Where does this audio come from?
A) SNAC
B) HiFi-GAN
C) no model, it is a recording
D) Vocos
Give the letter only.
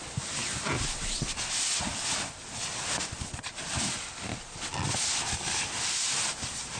C